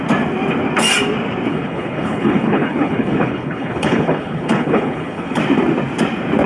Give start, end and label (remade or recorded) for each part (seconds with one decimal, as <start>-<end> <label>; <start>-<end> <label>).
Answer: 0.0-1.5 recorded; 1.5-5.4 remade; 5.4-6.5 recorded